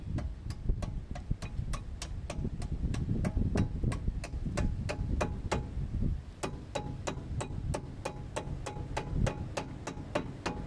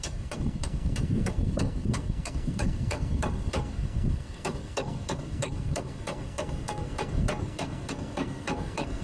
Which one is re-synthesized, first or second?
second